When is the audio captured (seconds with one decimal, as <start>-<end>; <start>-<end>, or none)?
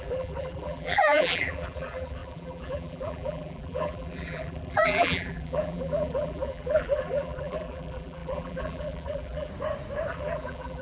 9.5-10.1